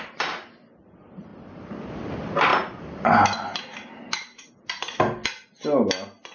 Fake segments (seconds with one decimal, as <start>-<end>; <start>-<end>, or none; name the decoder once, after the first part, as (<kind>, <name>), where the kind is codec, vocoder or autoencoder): 1.3-1.9 (vocoder, BigVGAN v2)